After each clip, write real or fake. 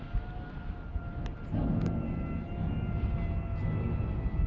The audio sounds real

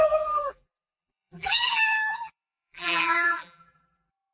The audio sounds fake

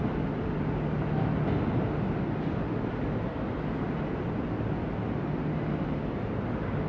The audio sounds real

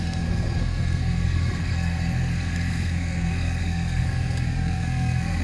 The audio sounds fake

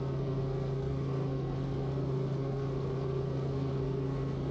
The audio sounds fake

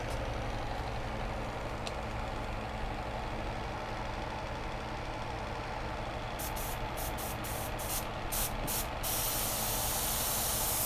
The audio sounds real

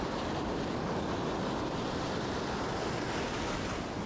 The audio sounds real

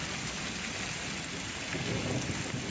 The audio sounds real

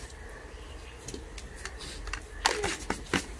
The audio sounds real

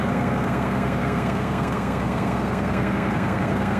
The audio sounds fake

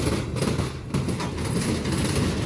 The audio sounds real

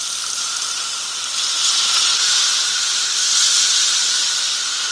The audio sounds real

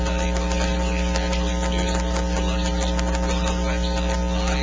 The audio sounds real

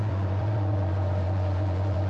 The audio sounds fake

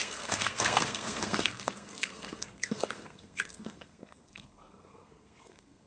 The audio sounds fake